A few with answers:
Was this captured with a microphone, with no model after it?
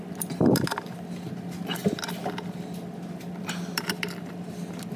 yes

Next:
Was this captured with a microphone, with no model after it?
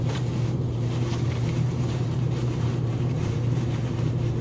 no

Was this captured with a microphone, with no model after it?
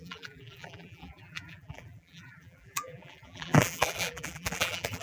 no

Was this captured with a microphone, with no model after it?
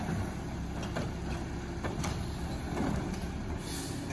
yes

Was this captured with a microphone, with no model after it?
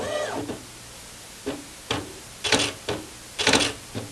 yes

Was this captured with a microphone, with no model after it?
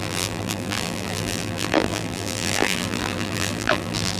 no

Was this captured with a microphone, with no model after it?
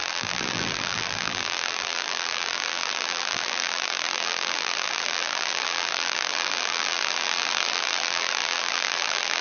no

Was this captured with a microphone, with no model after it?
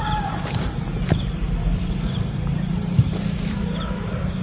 no